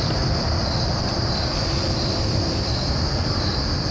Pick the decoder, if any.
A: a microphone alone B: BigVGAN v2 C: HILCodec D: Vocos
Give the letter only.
B